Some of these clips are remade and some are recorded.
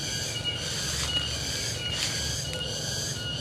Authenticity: recorded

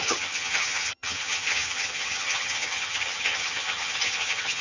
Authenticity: remade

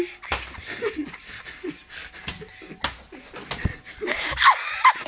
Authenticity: recorded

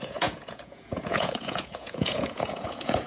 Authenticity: remade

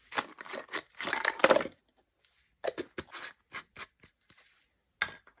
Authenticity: recorded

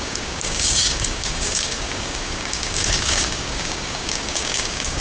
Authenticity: remade